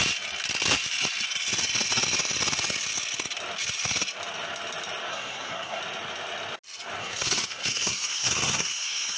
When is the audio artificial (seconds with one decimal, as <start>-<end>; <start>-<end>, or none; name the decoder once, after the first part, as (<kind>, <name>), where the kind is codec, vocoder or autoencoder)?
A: 5.1-5.8 (codec, SNAC); 7.0-9.2